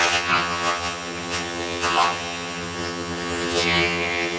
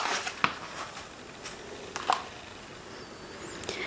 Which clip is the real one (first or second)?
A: second